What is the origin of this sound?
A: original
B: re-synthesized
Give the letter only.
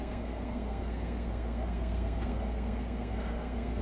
B